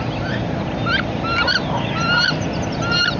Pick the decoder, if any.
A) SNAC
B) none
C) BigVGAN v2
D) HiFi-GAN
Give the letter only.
B